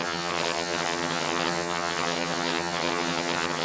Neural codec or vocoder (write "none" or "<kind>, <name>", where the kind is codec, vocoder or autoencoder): vocoder, HiFi-GAN